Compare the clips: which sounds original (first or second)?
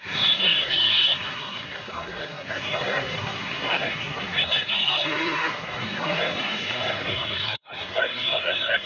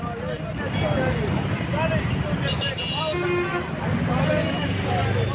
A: second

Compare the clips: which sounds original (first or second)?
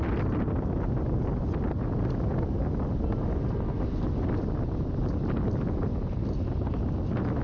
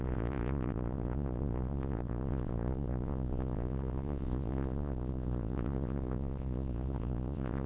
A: first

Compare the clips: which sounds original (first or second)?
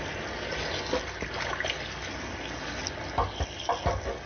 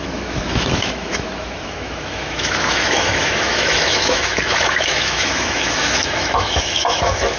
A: first